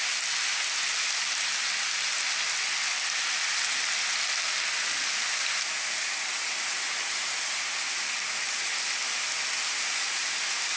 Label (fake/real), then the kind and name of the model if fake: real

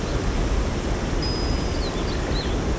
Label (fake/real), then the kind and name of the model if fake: real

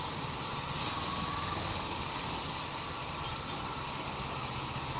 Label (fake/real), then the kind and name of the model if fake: real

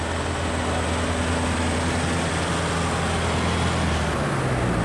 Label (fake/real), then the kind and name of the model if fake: real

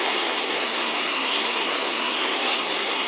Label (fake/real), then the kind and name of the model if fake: fake, codec, SNAC